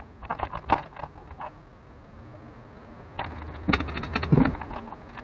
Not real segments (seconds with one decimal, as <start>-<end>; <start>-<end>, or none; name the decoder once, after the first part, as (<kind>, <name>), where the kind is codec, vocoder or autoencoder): none